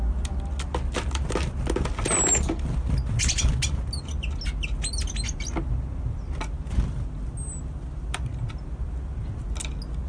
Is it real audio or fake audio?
real